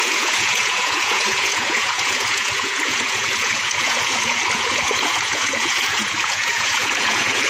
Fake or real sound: fake